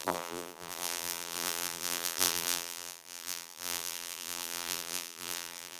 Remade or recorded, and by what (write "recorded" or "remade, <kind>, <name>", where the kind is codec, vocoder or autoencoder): remade, vocoder, BigVGAN v2